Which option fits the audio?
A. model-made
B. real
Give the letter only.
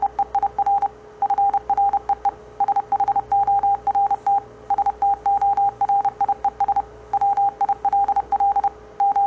B